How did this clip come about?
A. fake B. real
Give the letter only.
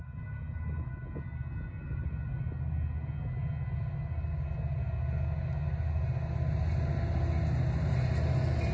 B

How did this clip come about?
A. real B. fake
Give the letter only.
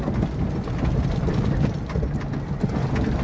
A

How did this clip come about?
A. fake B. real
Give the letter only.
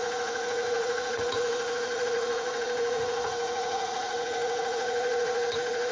A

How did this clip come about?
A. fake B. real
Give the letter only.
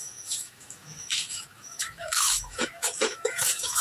A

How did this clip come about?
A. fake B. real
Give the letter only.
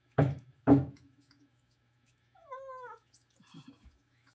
A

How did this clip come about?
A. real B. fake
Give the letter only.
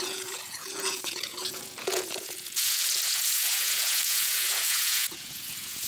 B